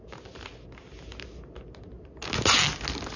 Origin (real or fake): real